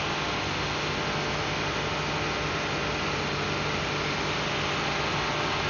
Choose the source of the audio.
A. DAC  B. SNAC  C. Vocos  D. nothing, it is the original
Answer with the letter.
D